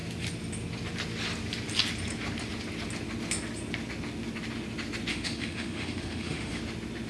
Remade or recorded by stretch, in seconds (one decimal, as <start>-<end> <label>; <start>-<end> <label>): 0.0-5.1 recorded; 5.1-6.6 remade; 6.6-7.1 recorded